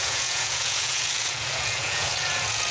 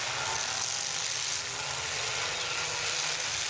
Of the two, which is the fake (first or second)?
first